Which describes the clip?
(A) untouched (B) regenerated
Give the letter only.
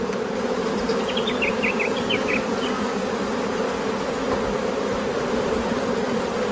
A